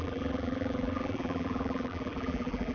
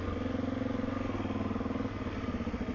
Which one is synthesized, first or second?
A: first